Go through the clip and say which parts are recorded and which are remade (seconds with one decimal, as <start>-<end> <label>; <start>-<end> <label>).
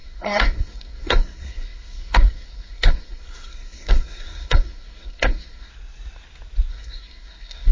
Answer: 0.0-5.7 remade; 5.7-6.7 recorded; 6.7-7.7 remade